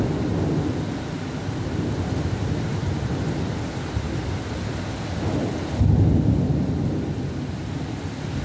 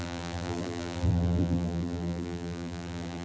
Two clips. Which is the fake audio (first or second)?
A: second